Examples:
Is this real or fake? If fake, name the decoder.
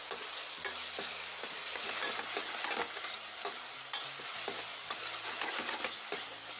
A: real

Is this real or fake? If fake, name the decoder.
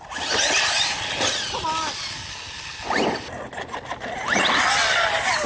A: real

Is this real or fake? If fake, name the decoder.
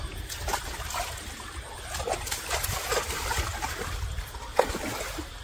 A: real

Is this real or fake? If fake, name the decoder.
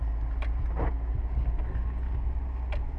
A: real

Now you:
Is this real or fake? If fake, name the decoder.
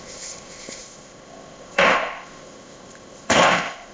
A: fake, codec, ZipCodec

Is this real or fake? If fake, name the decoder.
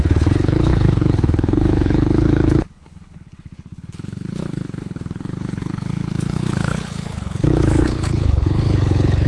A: fake, codec, HILCodec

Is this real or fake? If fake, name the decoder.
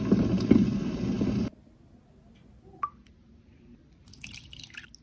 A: real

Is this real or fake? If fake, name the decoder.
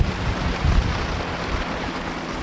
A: real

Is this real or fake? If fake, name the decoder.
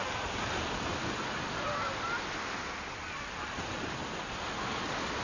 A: real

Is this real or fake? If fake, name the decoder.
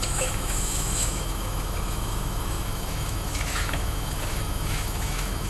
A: fake, autoencoder, DAC-VAE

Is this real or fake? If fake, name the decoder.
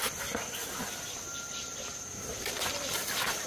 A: real